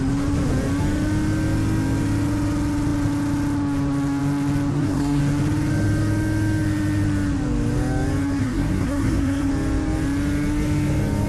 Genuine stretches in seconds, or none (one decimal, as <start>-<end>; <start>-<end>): 0.0-4.7; 5.2-8.4; 9.5-11.3